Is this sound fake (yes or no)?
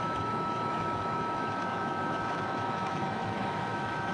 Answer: yes